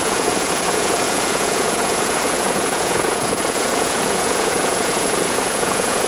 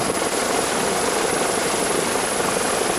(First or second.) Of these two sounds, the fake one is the first